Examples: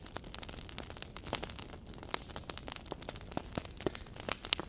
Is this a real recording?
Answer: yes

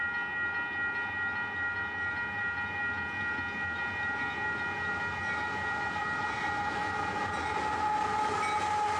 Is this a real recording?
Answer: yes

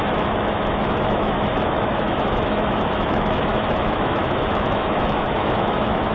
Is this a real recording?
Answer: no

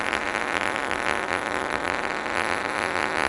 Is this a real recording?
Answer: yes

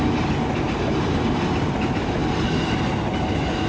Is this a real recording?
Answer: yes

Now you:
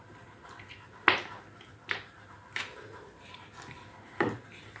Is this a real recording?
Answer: yes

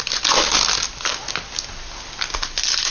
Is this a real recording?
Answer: yes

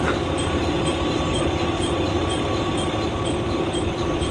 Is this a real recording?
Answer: yes